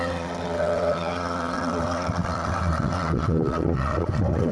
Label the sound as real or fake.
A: fake